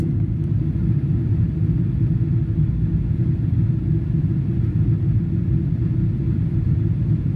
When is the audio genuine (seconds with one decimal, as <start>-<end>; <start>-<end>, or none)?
0.0-7.4